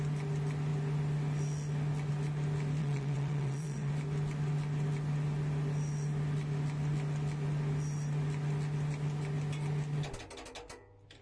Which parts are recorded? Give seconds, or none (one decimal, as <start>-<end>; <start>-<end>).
0.0-2.8; 3.9-11.2